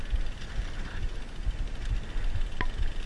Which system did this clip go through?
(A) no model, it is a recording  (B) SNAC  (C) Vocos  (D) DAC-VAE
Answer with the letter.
A